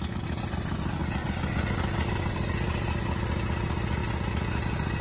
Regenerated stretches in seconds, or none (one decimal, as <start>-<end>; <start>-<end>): none